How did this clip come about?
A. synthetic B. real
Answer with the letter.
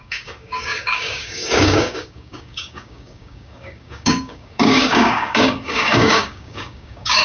A